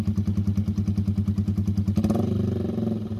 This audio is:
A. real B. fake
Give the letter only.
A